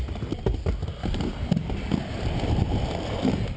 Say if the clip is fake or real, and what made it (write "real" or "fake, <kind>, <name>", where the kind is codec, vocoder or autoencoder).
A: real